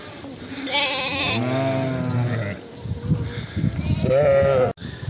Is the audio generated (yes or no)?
no